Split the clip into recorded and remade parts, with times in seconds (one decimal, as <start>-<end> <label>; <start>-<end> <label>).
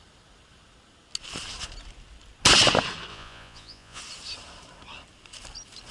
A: 0.0-3.1 recorded; 3.1-4.0 remade; 4.0-5.9 recorded